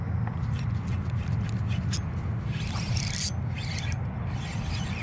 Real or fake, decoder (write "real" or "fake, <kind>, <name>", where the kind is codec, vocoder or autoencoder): real